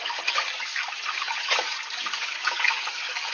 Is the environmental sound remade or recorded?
remade